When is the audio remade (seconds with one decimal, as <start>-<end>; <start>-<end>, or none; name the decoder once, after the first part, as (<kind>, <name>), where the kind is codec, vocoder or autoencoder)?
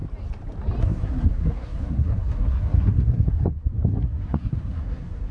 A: 0.8-5.3 (codec, SNAC)